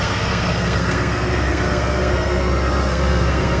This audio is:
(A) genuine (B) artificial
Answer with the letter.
B